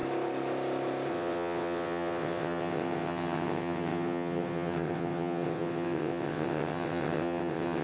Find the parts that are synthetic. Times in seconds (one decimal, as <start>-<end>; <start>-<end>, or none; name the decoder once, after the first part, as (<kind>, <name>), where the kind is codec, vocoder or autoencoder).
1.1-7.8 (vocoder, WaveNeXt)